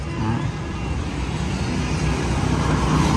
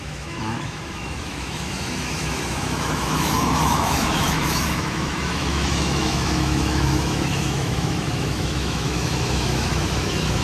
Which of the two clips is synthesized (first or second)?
second